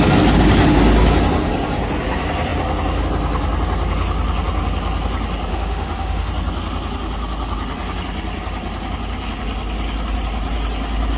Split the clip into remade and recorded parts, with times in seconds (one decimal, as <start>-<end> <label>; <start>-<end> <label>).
0.0-5.5 recorded; 5.5-6.3 remade; 6.3-11.2 recorded